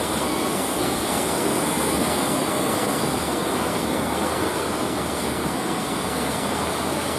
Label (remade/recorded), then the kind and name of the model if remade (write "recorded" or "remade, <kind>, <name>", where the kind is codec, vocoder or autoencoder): remade, codec, SNAC